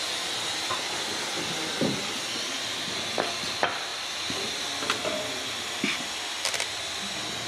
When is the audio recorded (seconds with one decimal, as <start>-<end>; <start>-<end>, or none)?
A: 0.0-7.5